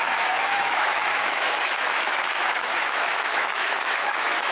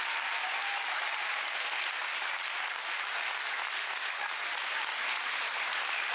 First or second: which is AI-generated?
first